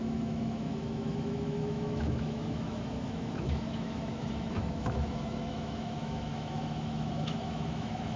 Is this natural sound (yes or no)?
no